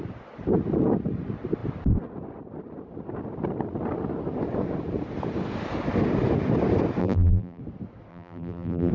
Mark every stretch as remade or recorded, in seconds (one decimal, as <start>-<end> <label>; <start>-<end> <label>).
0.0-7.0 recorded; 7.0-7.6 remade; 7.6-8.1 recorded; 8.1-8.9 remade